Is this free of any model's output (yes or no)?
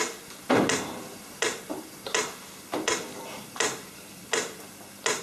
yes